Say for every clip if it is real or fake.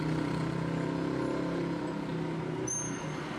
real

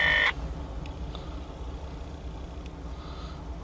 real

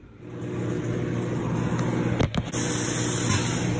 real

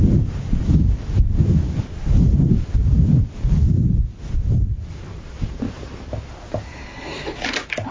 real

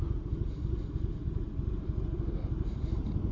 real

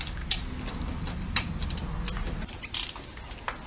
real